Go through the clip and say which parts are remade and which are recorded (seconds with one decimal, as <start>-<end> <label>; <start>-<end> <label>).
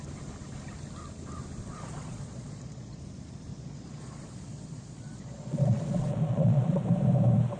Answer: 0.0-1.6 recorded; 1.6-3.0 remade; 3.0-3.5 recorded; 3.5-6.8 remade; 6.8-7.6 recorded